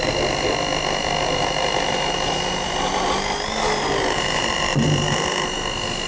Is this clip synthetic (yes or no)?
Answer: no